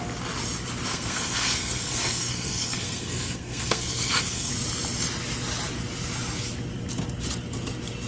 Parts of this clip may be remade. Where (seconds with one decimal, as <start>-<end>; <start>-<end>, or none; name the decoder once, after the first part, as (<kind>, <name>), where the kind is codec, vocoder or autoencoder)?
0.9-4.5 (codec, SNAC)

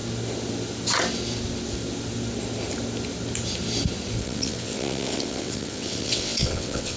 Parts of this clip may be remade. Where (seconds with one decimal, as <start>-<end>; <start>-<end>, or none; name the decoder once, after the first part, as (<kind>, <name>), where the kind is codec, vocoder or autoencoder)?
4.2-7.0 (vocoder, WaveNeXt)

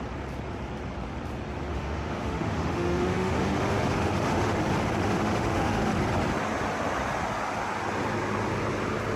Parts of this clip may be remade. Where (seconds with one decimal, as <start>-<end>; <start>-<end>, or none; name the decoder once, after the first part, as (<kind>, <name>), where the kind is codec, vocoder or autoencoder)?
1.7-4.6 (autoencoder, DAC-VAE); 5.0-6.0

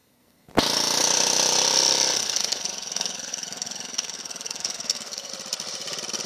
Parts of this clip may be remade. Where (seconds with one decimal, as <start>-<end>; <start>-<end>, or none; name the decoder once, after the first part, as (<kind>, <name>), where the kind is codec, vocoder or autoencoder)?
0.0-0.5 (codec, SNAC); 2.2-5.3

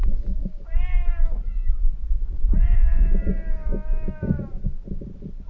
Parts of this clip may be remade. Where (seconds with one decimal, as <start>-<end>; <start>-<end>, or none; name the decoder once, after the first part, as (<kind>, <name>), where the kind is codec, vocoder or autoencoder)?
0.4-1.7 (vocoder, BigVGAN v2)

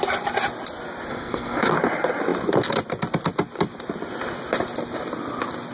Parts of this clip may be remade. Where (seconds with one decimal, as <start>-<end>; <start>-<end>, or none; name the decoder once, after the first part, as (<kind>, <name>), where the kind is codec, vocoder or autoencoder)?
1.1-1.7 (codec, SNAC)

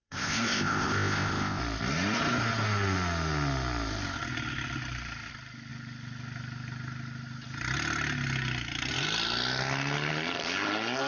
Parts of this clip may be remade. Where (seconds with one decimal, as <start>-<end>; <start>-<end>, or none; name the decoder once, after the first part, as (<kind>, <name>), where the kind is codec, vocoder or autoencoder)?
0.0-1.6 (codec, ZipCodec)

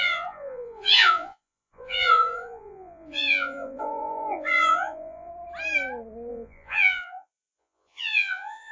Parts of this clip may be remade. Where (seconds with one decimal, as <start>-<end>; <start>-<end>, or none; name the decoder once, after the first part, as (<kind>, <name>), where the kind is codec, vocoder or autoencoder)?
0.0-5.3 (vocoder, Vocos); 6.3-8.7